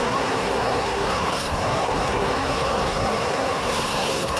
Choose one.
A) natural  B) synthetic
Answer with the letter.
B